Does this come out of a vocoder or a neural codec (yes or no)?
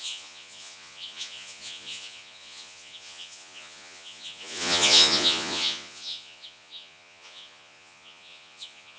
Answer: yes